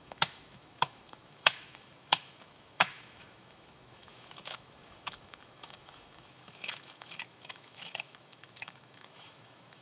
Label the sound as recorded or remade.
remade